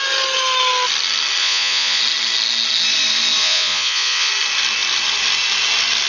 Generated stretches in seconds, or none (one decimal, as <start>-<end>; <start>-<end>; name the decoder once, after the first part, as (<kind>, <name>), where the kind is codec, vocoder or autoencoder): 1.4-2.0 (vocoder, Vocos); 3.4-4.3